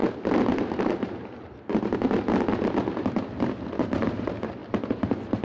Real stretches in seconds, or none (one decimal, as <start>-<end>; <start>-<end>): 0.0-5.4